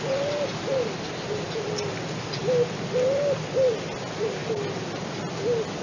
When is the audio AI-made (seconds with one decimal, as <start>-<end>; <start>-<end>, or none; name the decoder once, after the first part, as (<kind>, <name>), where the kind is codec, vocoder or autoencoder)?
none